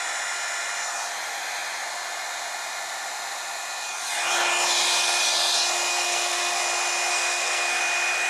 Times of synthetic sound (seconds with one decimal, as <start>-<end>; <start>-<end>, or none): 5.9-6.6; 7.1-7.8

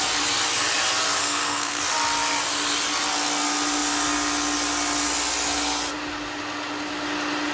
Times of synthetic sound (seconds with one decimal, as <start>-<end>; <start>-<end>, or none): 1.2-1.8

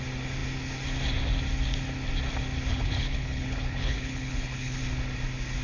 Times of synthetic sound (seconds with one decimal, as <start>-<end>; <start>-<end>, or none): 2.7-4.8

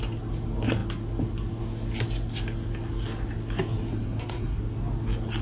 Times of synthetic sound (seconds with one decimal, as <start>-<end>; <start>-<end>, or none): 3.9-4.6

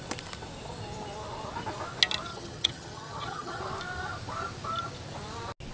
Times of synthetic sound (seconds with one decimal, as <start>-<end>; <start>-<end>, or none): 2.3-3.6

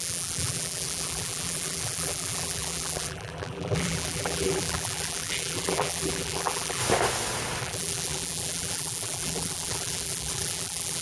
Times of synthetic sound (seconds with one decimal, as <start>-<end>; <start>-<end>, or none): 0.0-6.8; 7.6-11.0

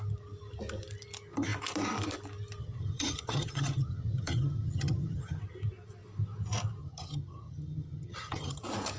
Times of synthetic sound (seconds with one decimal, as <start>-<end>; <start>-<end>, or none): 2.6-5.4; 6.8-8.6